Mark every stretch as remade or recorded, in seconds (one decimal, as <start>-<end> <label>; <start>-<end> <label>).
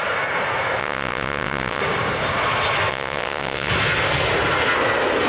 0.0-0.8 recorded; 0.8-1.8 remade; 1.8-2.9 recorded; 2.9-3.7 remade; 3.7-5.3 recorded